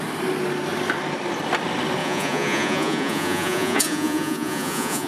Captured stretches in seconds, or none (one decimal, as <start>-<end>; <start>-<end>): 0.0-2.0